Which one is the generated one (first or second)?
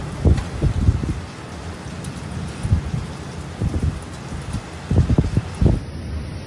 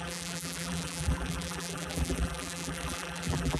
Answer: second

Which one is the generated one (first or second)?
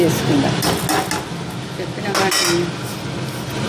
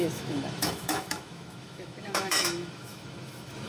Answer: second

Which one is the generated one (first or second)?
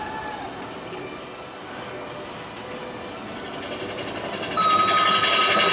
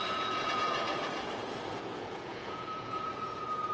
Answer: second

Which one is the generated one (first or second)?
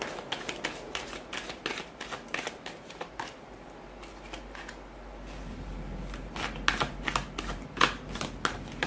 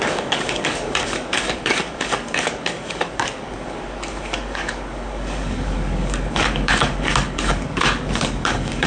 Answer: second